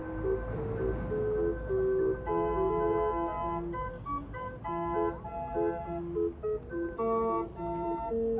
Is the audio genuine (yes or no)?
yes